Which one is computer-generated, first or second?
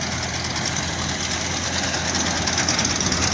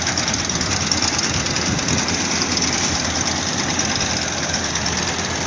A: second